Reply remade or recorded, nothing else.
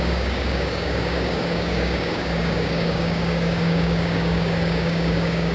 remade